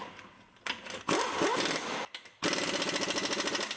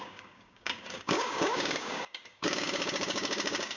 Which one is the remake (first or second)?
second